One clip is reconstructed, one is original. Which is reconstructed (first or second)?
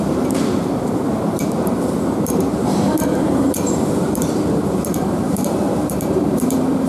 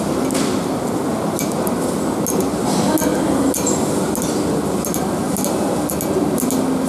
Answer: first